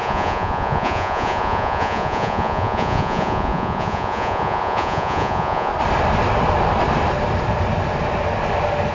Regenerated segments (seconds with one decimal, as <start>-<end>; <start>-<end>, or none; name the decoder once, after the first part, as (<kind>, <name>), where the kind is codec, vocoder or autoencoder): 0.0-5.7 (vocoder, Vocos)